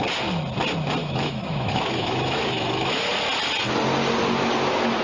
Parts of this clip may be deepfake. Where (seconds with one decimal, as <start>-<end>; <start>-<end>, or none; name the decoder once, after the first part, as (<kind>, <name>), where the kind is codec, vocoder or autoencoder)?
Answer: 1.0-3.1 (autoencoder, DAC-VAE)